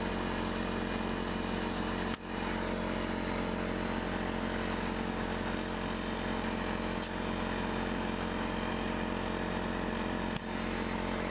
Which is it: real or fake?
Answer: real